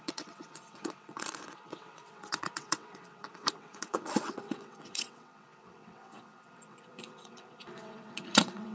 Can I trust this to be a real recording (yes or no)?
no